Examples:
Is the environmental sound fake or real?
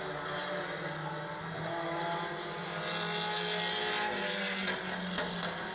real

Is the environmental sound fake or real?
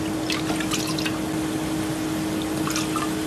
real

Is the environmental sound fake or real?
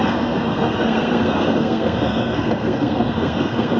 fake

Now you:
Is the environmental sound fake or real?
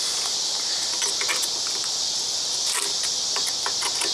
real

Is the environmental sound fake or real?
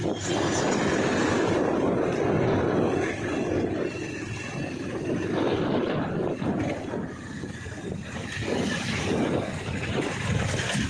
real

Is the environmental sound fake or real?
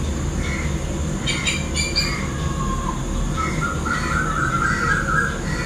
real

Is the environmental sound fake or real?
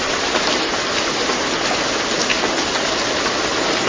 real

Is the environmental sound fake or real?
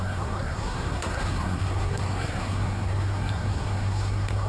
fake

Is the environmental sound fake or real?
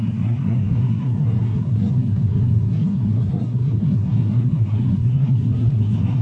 fake